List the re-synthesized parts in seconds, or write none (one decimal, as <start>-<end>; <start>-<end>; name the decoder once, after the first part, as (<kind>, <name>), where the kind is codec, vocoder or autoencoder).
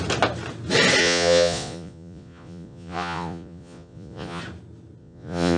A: 1.0-4.4 (vocoder, Vocos); 5.0-5.6